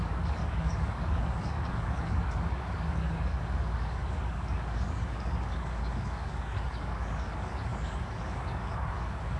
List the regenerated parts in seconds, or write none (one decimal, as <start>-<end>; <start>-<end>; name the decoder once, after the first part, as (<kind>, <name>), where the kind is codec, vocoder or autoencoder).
0.0-9.4 (codec, DAC)